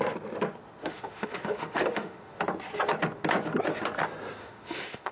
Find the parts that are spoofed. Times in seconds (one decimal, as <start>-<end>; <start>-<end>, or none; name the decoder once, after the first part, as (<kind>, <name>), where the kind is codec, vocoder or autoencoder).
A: 0.8-2.4 (autoencoder, DAC-VAE); 4.4-5.1